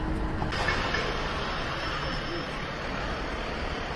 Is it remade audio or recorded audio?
recorded